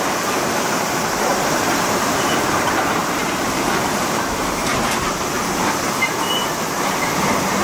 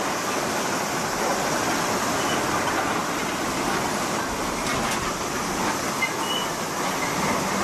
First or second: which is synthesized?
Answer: first